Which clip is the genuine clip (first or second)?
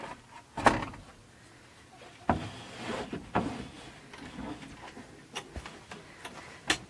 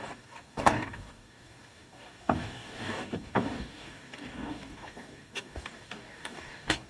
first